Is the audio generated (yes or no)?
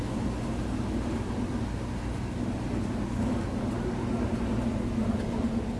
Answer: no